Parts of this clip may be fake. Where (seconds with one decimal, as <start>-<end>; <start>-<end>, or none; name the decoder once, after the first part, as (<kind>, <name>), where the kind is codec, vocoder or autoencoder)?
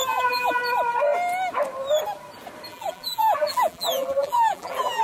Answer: 0.0-0.6 (vocoder, BigVGAN v2); 2.7-5.0